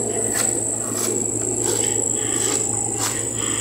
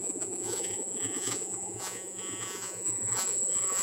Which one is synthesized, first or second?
second